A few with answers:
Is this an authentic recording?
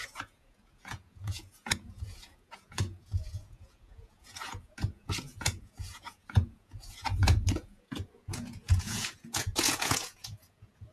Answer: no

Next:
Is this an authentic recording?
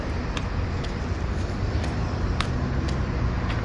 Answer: yes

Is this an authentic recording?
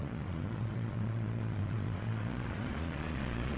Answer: no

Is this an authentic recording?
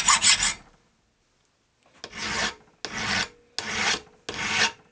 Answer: yes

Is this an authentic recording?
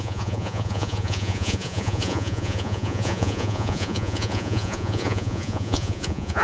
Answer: no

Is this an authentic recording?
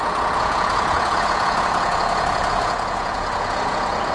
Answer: no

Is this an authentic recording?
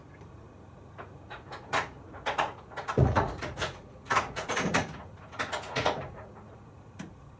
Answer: no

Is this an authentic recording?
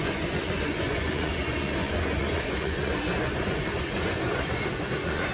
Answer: no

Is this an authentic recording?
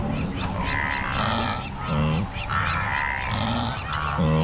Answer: yes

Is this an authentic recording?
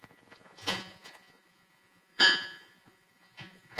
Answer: no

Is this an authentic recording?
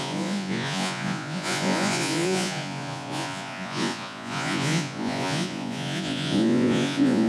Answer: no